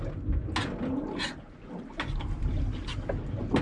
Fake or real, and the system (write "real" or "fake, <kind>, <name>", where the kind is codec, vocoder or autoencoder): real